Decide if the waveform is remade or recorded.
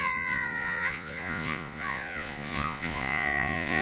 remade